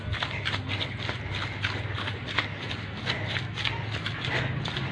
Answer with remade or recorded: recorded